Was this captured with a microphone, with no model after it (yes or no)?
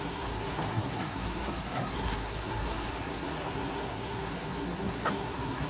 no